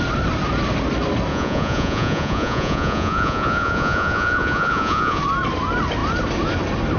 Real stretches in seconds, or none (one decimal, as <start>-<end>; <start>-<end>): 0.0-1.3; 5.2-7.0